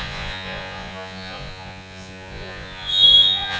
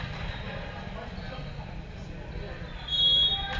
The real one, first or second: second